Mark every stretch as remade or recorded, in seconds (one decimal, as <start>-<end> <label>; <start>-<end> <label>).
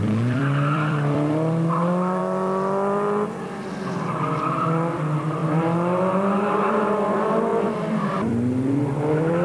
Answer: 0.0-9.4 remade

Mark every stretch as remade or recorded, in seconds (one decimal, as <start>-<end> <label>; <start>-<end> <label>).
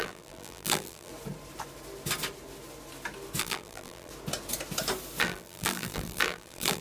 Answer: 0.0-1.1 remade; 1.1-3.4 recorded; 3.4-4.1 remade; 4.1-5.2 recorded; 5.2-6.8 remade